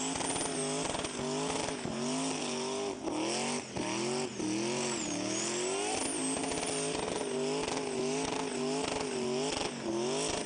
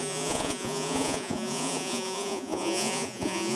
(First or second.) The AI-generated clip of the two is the second